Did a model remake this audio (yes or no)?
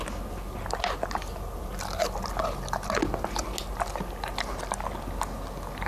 no